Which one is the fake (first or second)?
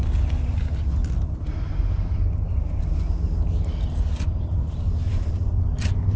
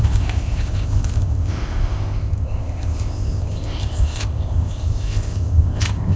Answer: second